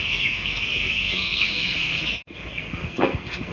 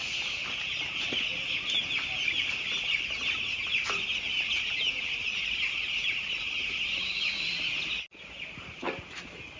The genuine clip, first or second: second